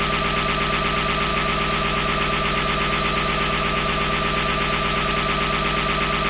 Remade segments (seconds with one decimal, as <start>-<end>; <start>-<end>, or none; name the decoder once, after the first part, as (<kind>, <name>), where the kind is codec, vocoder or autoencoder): 1.3-5.1 (autoencoder, DAC-VAE)